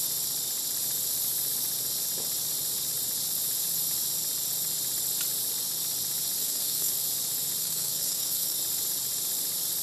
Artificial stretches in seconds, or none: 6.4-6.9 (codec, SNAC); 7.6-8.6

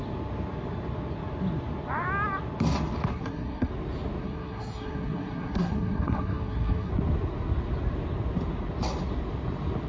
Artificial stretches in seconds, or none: 3.1-3.7 (codec, SNAC); 4.2-6.9

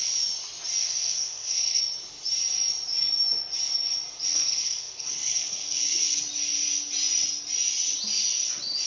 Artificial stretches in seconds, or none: 0.8-1.8 (codec, SNAC); 4.3-6.2